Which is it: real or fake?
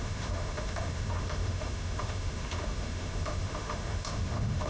fake